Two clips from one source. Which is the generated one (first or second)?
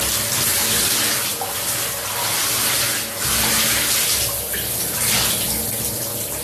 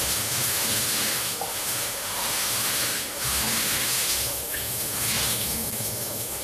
second